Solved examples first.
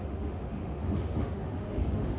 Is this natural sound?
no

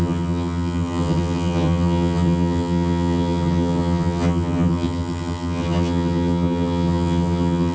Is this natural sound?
no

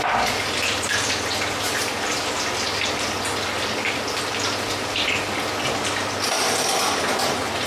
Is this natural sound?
yes